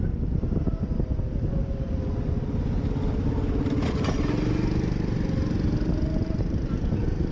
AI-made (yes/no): no